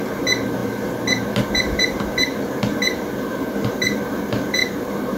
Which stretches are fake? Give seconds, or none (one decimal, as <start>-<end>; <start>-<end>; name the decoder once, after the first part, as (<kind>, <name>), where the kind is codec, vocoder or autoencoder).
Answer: 4.6-5.2 (vocoder, BigVGAN v2)